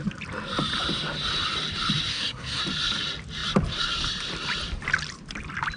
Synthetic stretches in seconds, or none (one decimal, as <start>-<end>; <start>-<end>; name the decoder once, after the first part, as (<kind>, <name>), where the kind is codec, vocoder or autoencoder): 2.1-2.6 (codec, SNAC)